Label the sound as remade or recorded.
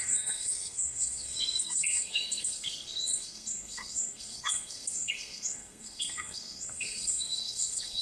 remade